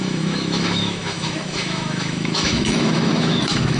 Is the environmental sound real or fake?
fake